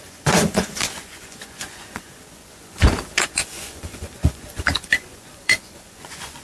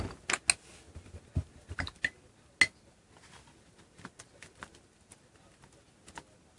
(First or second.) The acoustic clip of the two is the second